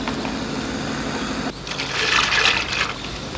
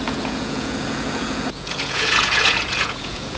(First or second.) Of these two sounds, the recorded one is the first